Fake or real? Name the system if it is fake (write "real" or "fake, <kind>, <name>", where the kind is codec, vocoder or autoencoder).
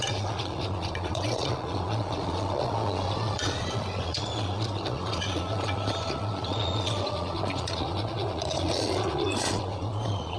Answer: fake, vocoder, Vocos